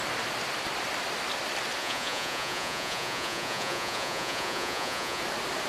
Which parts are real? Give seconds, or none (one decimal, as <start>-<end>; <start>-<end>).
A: 0.0-1.8; 5.2-5.7